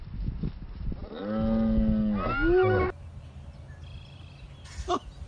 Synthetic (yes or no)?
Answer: no